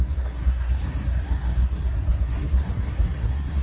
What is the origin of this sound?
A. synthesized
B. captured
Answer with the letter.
A